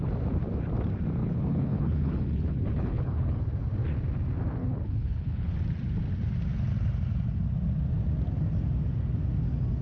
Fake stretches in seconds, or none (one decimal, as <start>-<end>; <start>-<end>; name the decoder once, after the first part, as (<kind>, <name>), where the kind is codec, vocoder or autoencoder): 1.2-3.4 (codec, HILCodec); 4.6-5.6